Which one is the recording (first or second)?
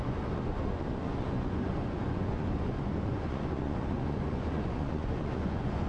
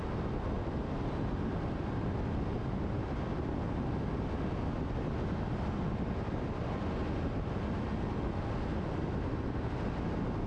second